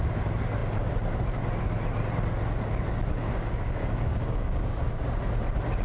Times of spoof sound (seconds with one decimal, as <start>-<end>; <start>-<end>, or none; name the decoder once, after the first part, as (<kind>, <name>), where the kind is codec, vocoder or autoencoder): 3.2-4.8 (codec, DAC)